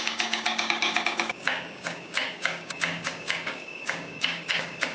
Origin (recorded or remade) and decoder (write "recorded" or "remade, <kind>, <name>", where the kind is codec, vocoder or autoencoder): remade, codec, DAC